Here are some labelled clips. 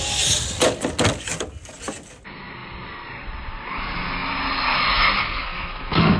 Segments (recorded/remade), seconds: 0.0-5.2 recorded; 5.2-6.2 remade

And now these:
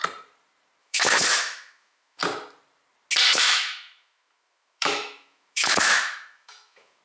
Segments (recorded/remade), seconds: 0.0-0.8 recorded; 0.8-2.2 remade; 2.2-3.3 recorded; 3.3-7.0 remade

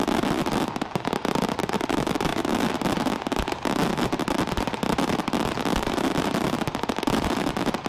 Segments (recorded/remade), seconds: 0.0-2.3 remade; 2.3-3.9 recorded; 3.9-7.9 remade

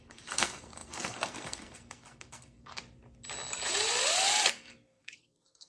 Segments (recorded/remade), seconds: 0.0-2.8 remade; 2.8-4.5 recorded; 4.5-5.7 remade

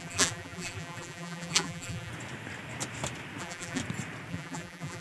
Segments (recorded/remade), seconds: 0.0-2.1 remade; 2.1-3.4 recorded; 3.4-3.8 remade; 3.8-4.3 recorded; 4.3-5.0 remade

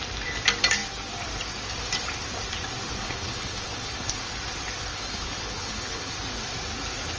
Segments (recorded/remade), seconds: 0.0-3.0 recorded; 3.0-4.3 remade; 4.3-4.9 recorded; 4.9-6.1 remade; 6.1-7.2 recorded

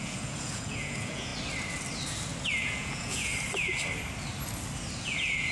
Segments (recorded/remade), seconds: 0.0-1.3 remade; 1.3-2.5 recorded; 2.5-3.3 remade; 3.3-5.0 recorded; 5.0-5.5 remade

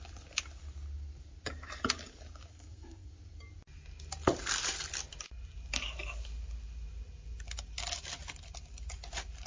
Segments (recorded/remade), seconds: 0.0-2.5 recorded; 2.5-3.1 remade; 3.1-9.5 recorded